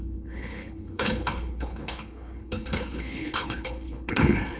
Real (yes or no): no